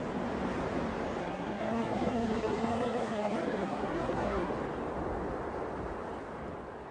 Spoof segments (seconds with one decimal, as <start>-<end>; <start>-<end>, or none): 1.2-4.5